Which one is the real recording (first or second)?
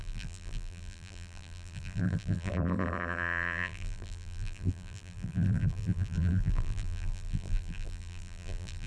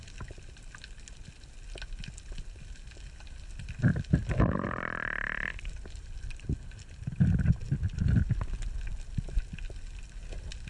second